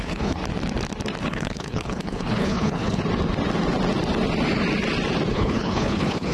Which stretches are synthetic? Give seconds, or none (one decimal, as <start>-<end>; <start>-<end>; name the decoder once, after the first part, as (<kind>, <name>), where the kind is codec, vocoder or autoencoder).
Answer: 0.0-0.4 (codec, HILCodec); 1.2-3.0; 5.3-6.3